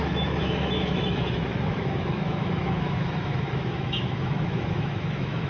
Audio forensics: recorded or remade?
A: remade